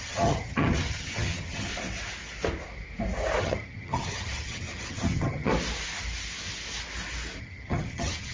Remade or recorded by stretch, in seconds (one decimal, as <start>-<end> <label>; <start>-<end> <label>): 0.0-1.7 remade; 1.7-3.4 recorded; 3.4-5.5 remade; 5.5-7.4 recorded; 7.4-8.3 remade

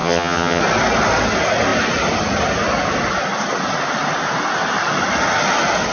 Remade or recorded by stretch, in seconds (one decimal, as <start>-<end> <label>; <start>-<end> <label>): 0.0-0.6 remade; 0.6-5.9 recorded

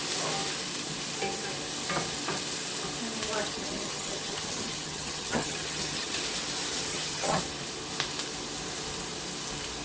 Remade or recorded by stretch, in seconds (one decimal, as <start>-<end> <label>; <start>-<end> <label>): 0.0-3.4 recorded; 3.4-6.2 remade; 6.2-6.9 recorded; 6.9-7.4 remade; 7.4-9.8 recorded

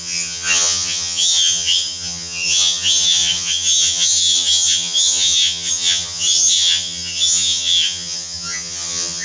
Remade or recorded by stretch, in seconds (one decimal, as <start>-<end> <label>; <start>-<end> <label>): 0.0-9.2 remade

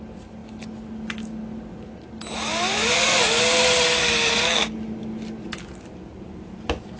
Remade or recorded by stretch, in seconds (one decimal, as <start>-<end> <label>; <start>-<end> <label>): 0.0-7.0 recorded